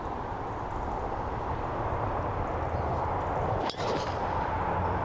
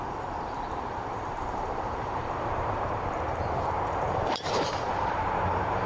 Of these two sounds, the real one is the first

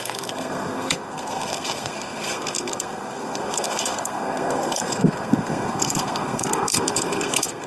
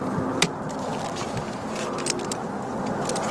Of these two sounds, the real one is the second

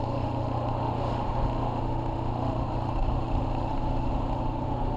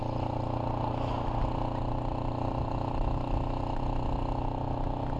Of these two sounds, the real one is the second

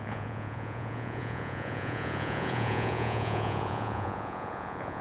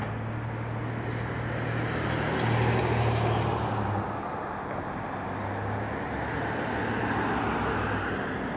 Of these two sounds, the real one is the second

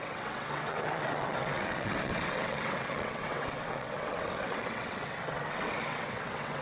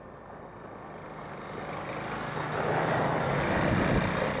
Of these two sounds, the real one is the second